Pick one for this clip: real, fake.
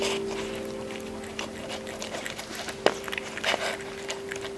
real